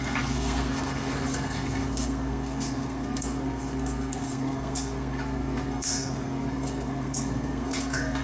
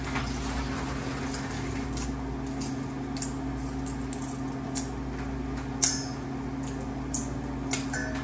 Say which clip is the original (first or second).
second